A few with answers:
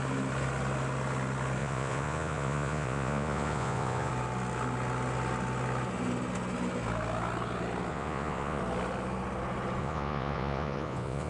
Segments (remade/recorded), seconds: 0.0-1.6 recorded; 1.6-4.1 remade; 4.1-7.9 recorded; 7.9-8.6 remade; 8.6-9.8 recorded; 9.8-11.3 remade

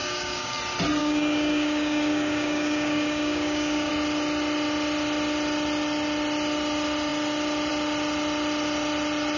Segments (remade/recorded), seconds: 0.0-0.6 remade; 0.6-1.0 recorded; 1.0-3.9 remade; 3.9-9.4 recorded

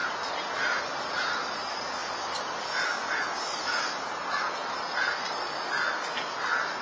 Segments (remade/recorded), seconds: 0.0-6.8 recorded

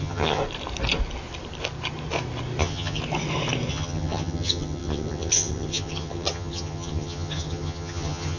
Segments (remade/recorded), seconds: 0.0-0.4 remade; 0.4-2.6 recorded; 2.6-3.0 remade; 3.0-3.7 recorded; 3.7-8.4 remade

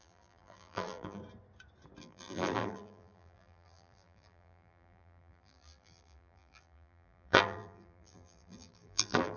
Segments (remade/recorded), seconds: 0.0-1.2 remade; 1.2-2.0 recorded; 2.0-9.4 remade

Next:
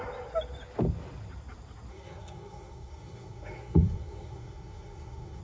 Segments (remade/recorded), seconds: 0.0-1.9 recorded; 1.9-5.4 remade